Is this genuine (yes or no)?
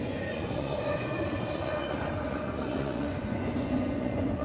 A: no